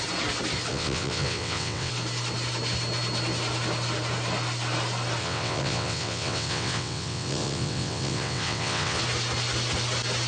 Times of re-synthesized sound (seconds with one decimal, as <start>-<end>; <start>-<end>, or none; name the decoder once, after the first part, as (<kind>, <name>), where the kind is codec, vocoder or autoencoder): 0.7-1.9 (vocoder, WaveNeXt); 5.2-9.0